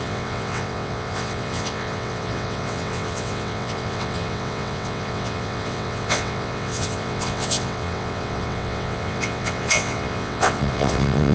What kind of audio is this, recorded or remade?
remade